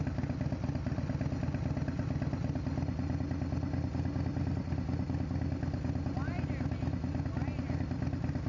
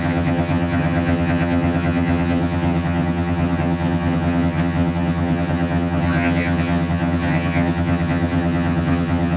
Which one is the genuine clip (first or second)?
first